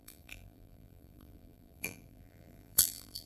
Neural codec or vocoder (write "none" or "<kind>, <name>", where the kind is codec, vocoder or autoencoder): vocoder, BigVGAN v2